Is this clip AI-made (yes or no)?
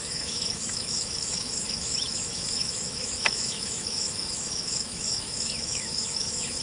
yes